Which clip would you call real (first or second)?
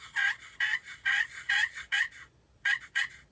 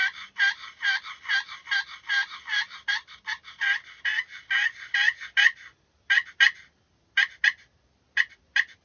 second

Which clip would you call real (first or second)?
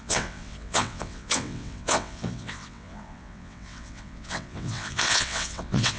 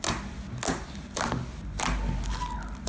second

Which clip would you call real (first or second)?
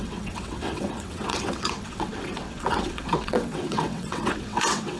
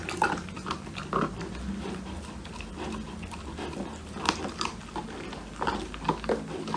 second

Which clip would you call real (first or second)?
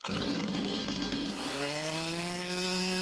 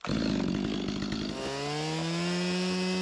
second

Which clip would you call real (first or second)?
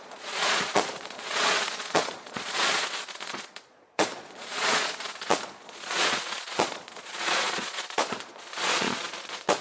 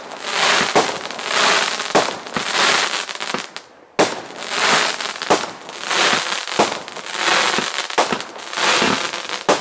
second